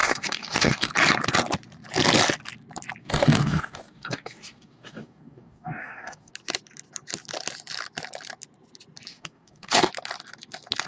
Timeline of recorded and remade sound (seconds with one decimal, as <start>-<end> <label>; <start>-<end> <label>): 0.0-0.9 remade; 0.9-3.0 recorded; 3.0-6.3 remade; 6.3-9.1 recorded; 9.1-9.9 remade; 9.9-10.9 recorded